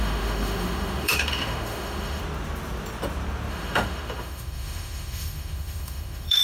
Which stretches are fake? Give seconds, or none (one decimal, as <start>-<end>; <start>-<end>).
0.0-2.2; 3.5-6.4